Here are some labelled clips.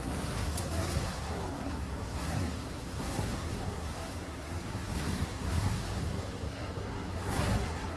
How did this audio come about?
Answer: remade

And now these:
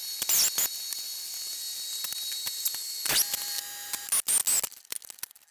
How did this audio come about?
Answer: recorded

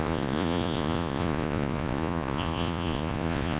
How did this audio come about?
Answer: remade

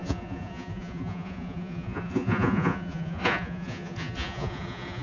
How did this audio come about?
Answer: remade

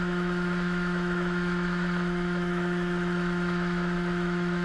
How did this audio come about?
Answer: remade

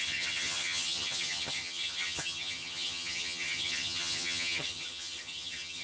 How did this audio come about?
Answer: remade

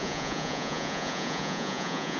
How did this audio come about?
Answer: remade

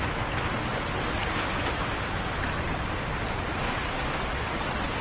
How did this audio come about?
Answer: recorded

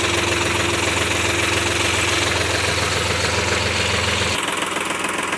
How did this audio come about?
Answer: recorded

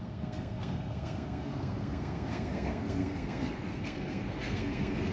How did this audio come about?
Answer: remade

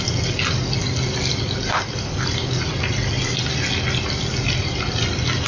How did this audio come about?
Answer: recorded